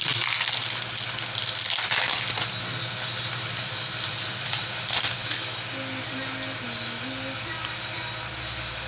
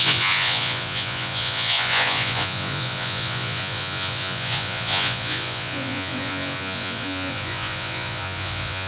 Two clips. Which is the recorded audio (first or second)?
first